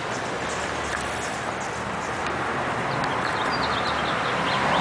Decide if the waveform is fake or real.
fake